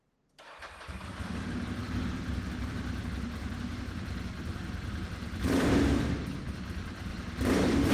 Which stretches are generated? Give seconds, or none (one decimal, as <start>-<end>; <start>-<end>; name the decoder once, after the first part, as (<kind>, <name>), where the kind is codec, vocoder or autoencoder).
1.8-5.7 (vocoder, BigVGAN v2); 7.1-7.9